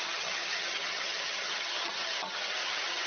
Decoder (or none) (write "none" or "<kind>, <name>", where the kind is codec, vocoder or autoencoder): vocoder, HiFi-GAN